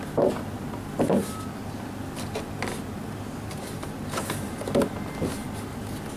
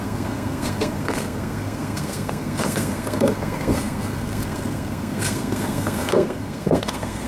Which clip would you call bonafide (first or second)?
first